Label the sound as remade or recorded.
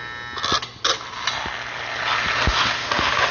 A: recorded